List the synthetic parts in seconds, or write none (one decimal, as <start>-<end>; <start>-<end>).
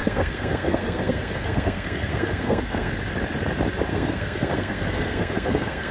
0.0-2.9; 3.9-5.9